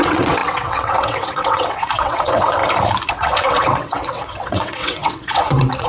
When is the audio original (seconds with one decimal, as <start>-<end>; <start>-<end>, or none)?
2.6-3.1